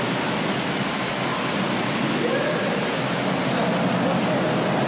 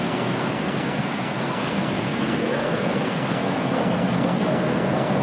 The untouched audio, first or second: first